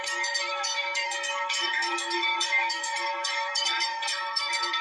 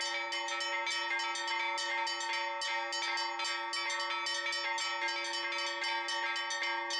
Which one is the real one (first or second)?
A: second